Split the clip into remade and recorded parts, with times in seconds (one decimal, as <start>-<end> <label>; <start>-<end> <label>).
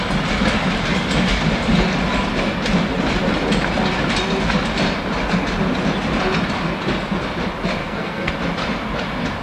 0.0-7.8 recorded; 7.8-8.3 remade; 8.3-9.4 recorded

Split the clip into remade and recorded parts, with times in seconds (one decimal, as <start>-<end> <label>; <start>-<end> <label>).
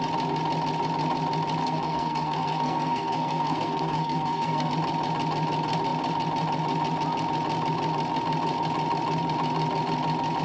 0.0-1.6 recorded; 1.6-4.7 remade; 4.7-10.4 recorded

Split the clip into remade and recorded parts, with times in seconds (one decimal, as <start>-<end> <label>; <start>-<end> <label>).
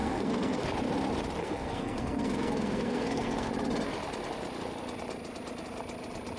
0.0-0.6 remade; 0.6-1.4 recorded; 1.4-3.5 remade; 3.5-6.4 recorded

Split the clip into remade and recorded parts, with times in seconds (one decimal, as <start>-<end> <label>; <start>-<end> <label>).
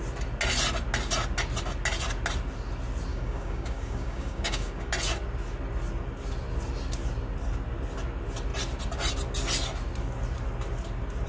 0.0-3.1 recorded; 3.1-4.9 remade; 4.9-11.3 recorded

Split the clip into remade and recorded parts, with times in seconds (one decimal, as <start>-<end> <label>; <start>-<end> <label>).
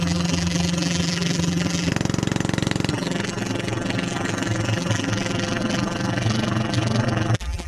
0.0-1.9 remade; 1.9-2.9 recorded; 2.9-7.7 remade